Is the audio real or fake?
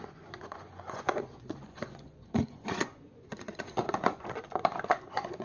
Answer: fake